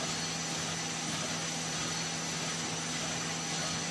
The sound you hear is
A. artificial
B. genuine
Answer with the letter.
B